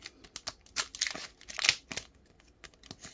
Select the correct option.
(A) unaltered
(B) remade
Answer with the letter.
A